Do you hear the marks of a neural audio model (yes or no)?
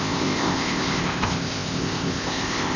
yes